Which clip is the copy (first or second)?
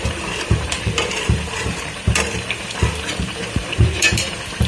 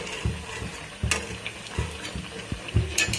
first